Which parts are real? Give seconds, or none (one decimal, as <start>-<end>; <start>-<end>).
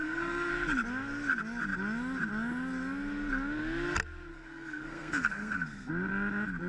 0.5-4.3; 5.9-6.7